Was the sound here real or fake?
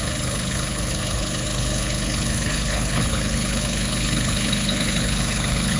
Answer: fake